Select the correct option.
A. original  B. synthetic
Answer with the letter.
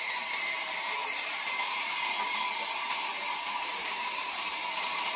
B